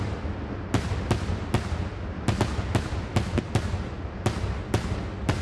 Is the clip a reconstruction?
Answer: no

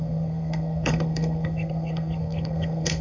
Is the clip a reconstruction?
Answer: yes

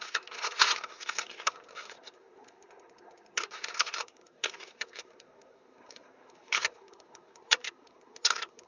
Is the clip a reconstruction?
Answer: yes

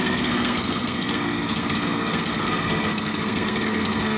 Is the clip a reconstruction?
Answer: yes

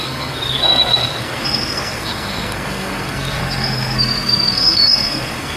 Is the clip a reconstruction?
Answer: yes